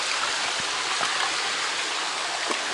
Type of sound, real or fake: real